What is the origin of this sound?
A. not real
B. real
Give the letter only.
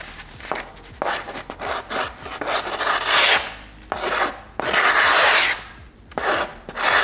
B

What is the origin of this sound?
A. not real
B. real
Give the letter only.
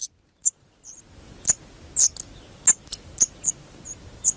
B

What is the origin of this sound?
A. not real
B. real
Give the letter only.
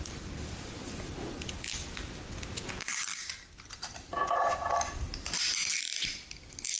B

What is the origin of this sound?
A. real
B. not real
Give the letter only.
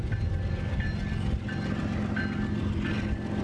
A